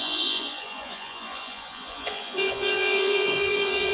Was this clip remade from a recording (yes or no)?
yes